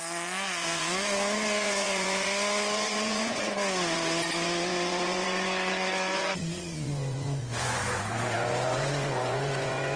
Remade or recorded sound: remade